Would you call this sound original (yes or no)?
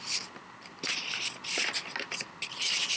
yes